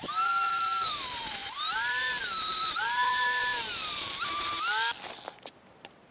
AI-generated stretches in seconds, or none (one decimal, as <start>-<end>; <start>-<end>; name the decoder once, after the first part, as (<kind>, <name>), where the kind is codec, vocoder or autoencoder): 0.0-3.5 (vocoder, BigVGAN v2); 5.4-6.1